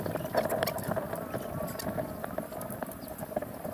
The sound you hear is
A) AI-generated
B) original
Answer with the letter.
B